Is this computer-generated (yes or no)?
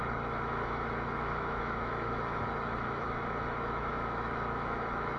yes